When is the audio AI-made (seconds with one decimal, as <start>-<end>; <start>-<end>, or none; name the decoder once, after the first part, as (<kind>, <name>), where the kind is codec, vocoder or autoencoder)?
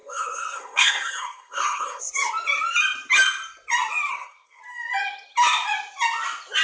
0.0-2.0 (codec, SNAC); 4.1-4.6